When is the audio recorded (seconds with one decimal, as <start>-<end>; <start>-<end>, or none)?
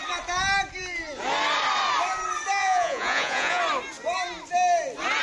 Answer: 0.0-2.6; 3.6-5.2